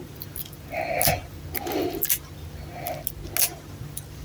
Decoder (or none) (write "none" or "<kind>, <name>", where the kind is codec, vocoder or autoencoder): none